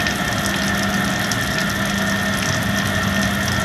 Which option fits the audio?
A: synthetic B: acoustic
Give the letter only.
B